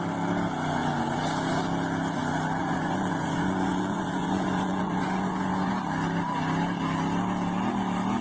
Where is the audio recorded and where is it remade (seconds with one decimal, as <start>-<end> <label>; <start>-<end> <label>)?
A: 0.0-2.6 recorded; 2.6-5.7 remade; 5.7-8.2 recorded

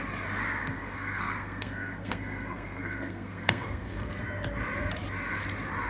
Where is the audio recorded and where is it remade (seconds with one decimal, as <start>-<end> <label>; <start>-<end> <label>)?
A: 0.0-0.6 recorded; 0.6-4.1 remade; 4.1-5.9 recorded

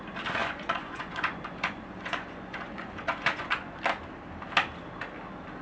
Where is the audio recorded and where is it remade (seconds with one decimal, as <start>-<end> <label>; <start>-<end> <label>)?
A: 0.0-0.4 recorded; 0.4-3.8 remade; 3.8-5.6 recorded

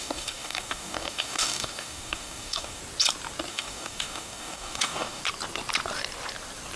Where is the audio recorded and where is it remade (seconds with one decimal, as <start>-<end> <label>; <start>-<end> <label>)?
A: 0.0-2.8 remade; 2.8-3.5 recorded; 3.5-5.2 remade; 5.2-6.8 recorded

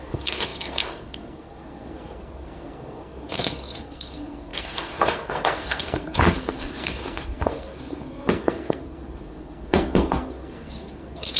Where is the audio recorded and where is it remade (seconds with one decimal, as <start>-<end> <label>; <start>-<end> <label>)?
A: 0.0-11.4 remade